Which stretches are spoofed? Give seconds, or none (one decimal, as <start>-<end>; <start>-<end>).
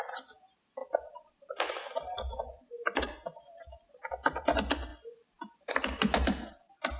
none